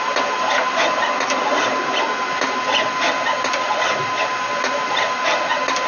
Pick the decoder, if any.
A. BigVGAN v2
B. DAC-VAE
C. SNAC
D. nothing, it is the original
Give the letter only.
D